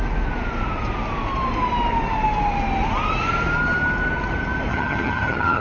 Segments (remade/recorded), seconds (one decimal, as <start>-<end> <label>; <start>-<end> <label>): 0.0-4.7 recorded; 4.7-5.6 remade